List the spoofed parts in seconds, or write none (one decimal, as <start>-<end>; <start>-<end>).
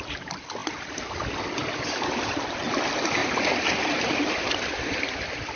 3.2-4.5